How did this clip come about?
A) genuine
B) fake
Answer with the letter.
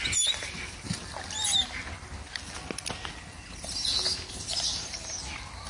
A